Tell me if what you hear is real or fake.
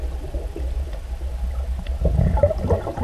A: real